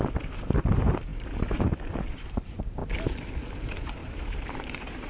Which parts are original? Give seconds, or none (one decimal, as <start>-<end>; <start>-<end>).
2.8-3.4